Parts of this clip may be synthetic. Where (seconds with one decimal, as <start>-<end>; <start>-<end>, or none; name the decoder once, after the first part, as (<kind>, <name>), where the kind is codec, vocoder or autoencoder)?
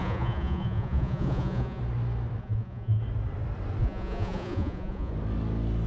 0.0-1.8 (vocoder, Vocos); 2.4-3.0; 3.8-5.1